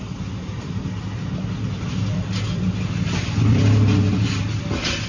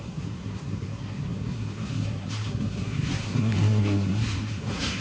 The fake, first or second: second